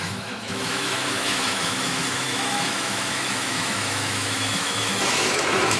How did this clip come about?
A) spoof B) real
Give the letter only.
A